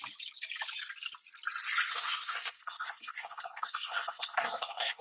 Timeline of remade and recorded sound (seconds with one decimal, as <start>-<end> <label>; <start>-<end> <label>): 0.0-1.9 recorded; 1.9-5.0 remade